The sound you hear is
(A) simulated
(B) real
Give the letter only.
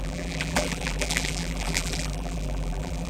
A